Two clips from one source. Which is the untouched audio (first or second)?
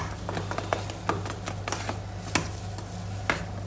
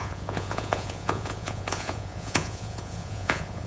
first